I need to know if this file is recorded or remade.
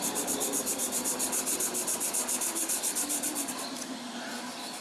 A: remade